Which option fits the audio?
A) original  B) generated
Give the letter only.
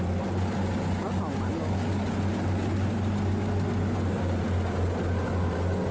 A